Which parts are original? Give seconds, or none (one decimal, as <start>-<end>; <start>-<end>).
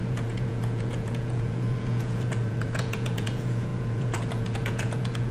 none